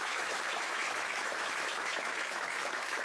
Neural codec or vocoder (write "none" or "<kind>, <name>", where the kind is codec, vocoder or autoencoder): autoencoder, DAC-VAE